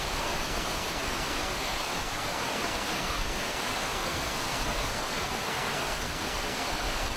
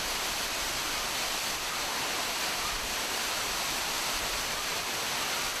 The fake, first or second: first